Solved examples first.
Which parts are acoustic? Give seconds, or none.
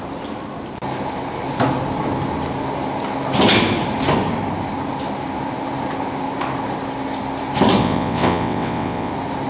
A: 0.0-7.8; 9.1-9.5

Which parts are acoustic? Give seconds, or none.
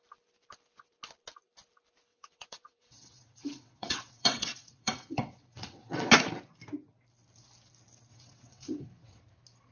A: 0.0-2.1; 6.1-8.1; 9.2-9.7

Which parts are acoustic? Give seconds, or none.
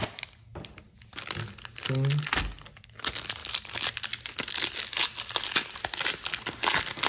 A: 0.0-7.1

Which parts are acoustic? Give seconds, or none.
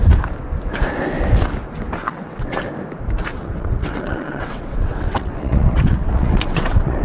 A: 0.0-2.0; 2.6-3.3